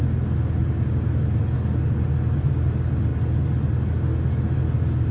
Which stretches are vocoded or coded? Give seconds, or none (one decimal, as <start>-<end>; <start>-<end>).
none